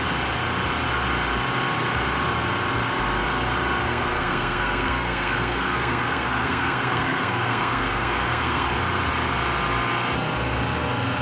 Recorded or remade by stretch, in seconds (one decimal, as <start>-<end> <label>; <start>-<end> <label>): 0.0-3.9 recorded; 3.9-8.7 remade; 8.7-11.2 recorded